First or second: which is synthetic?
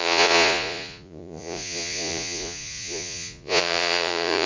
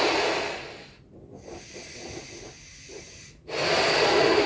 first